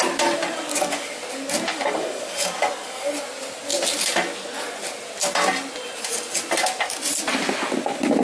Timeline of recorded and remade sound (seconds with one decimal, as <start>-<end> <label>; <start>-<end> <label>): 0.0-0.7 recorded; 0.7-1.2 remade; 1.2-1.7 recorded; 1.7-3.1 remade; 3.1-8.2 recorded